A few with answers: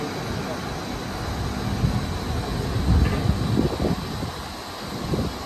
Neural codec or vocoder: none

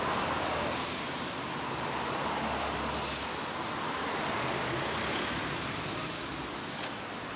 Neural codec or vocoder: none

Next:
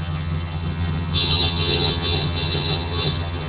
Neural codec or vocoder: vocoder, HiFi-GAN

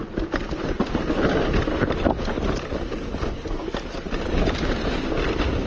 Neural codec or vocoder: vocoder, BigVGAN v2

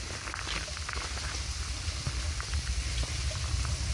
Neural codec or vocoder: vocoder, BigVGAN v2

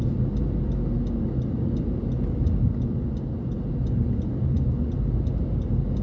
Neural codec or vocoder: none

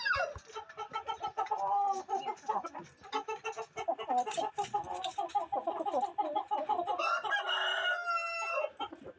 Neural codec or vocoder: none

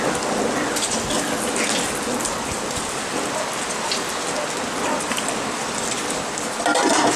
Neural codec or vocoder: none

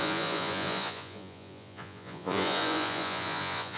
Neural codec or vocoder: vocoder, Vocos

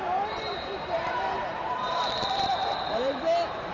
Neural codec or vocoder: vocoder, BigVGAN v2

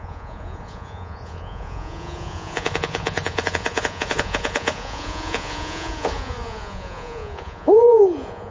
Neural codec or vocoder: vocoder, Vocos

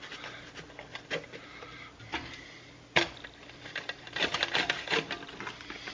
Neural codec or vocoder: none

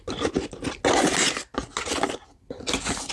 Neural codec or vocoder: none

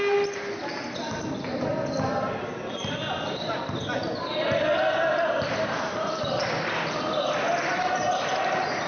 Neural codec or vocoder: none